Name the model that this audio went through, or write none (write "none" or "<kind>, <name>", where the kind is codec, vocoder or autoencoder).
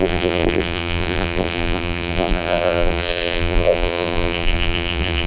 vocoder, BigVGAN v2